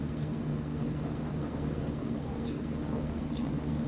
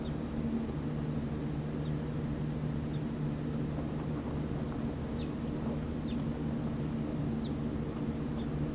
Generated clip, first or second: first